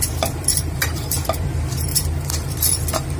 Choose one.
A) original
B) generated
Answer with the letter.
B